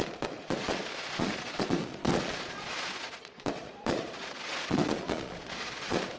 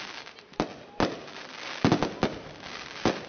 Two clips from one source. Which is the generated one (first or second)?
first